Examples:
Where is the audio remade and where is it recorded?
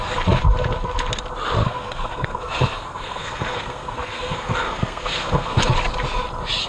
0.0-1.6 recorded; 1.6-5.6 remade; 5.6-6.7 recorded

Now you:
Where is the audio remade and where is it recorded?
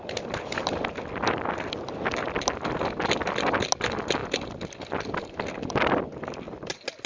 0.0-7.1 recorded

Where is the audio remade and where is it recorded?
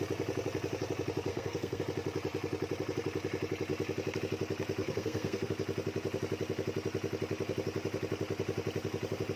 0.0-1.3 recorded; 1.3-1.8 remade; 1.8-4.8 recorded; 4.8-5.5 remade; 5.5-9.4 recorded